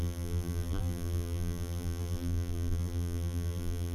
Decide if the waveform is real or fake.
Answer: fake